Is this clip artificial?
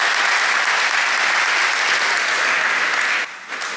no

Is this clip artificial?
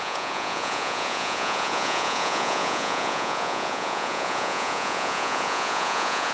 yes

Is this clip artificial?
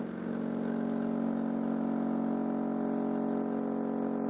no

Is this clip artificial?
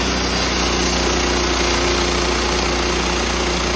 no